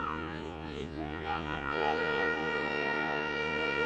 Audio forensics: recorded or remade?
remade